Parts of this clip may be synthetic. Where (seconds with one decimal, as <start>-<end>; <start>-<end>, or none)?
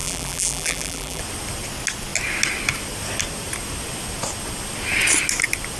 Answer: 0.0-1.2